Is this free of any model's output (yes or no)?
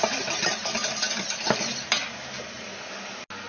yes